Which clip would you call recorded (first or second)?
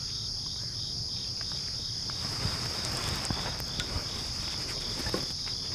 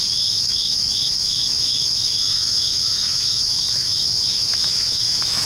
first